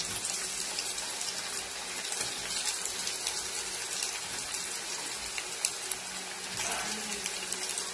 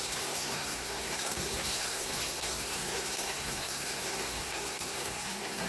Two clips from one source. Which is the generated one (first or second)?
second